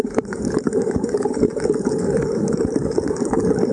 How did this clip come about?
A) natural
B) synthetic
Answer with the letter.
B